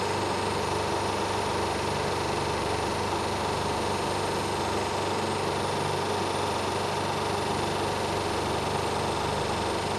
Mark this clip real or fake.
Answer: real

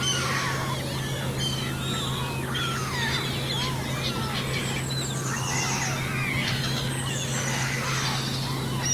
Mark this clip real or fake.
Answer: real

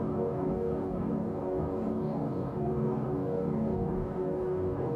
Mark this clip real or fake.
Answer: fake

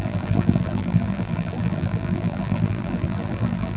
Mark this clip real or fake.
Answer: fake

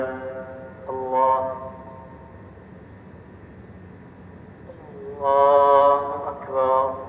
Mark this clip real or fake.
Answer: real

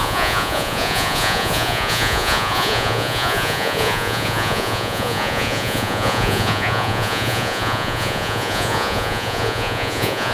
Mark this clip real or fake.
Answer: fake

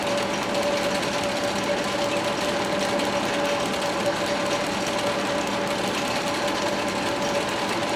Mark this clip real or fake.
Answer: real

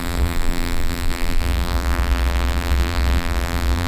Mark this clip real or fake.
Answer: fake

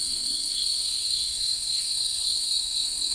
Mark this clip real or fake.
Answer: fake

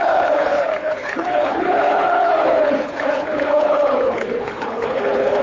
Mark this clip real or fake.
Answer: fake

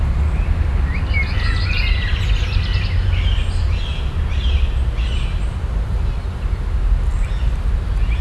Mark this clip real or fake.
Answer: real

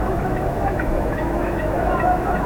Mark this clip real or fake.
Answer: fake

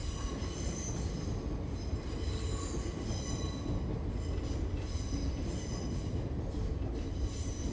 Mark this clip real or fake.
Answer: real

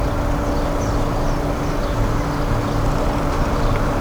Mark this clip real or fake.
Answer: real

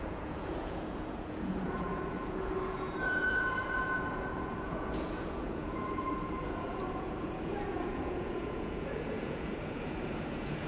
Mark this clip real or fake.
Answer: fake